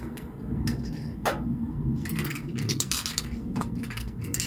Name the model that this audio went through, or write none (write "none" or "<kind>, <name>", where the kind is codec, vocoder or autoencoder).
codec, SNAC